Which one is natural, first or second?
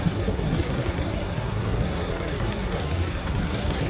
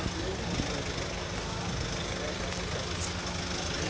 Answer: second